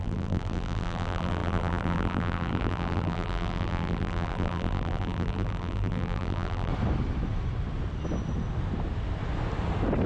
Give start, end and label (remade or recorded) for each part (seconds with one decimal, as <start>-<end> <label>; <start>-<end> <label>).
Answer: 0.0-6.7 remade; 6.7-10.1 recorded